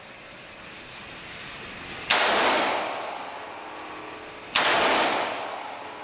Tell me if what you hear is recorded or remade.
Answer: recorded